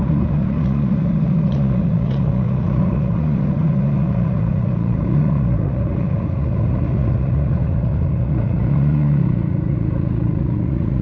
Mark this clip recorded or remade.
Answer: remade